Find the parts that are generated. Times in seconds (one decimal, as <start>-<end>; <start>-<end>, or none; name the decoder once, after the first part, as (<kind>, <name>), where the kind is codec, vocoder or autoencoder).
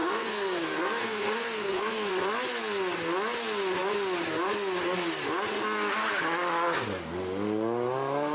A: 0.0-2.1 (codec, SNAC)